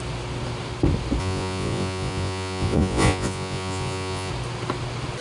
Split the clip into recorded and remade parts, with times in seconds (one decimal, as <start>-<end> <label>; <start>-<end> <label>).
0.0-1.2 recorded; 1.2-4.3 remade; 4.3-5.2 recorded